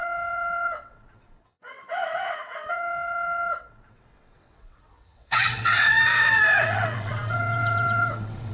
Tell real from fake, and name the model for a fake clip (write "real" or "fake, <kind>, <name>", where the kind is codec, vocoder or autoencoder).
fake, vocoder, WaveNeXt